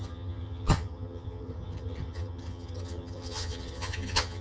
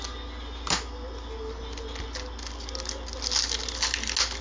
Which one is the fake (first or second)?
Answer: first